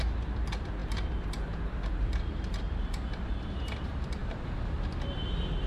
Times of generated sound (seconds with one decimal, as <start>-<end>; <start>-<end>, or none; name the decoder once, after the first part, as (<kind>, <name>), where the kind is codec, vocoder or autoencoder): 0.0-5.7 (vocoder, BigVGAN v2)